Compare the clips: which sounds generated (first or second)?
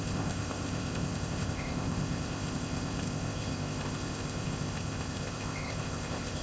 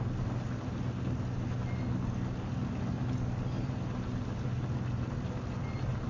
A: first